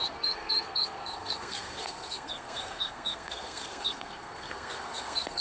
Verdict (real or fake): fake